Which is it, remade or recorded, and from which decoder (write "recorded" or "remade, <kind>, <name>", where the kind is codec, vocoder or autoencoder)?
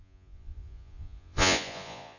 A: remade, vocoder, Vocos